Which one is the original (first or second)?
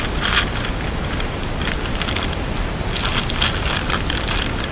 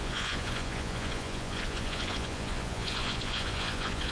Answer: first